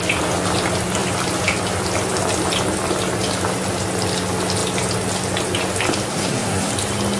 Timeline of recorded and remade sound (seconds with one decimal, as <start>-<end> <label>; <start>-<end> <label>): 0.0-6.1 recorded; 6.1-6.7 remade; 6.7-7.2 recorded